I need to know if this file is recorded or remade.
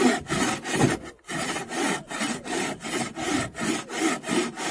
recorded